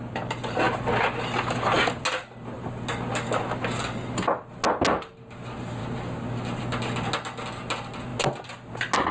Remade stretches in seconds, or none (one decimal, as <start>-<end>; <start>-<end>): none